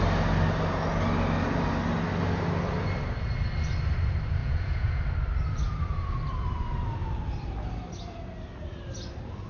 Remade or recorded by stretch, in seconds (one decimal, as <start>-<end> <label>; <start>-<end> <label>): 0.0-4.4 recorded; 4.4-5.0 remade; 5.0-9.5 recorded